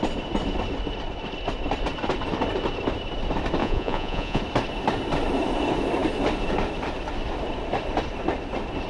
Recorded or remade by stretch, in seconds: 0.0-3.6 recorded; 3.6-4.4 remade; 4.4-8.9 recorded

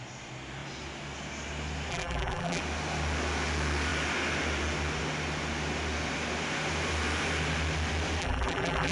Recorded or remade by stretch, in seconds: 0.0-1.9 recorded; 1.9-2.6 remade; 2.6-8.2 recorded; 8.2-8.9 remade

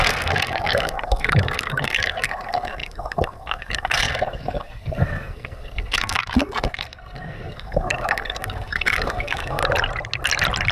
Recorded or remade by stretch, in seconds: 0.0-9.6 remade; 9.6-10.7 recorded

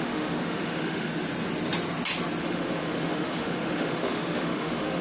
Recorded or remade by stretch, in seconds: 0.0-1.1 remade; 1.1-2.4 recorded; 2.4-5.0 remade

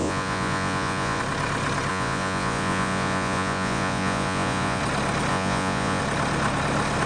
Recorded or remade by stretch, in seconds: 0.0-1.2 remade; 1.2-1.9 recorded; 1.9-4.8 remade; 4.8-5.3 recorded; 5.3-6.0 remade; 6.0-7.1 recorded

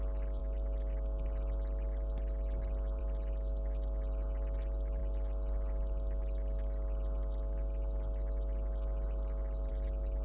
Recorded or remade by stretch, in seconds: 0.0-10.2 recorded

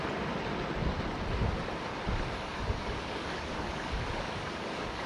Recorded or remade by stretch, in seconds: 0.0-1.9 recorded; 1.9-5.1 remade

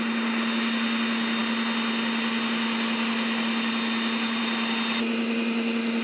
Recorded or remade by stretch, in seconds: 0.0-6.0 recorded